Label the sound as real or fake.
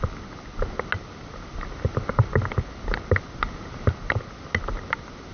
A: real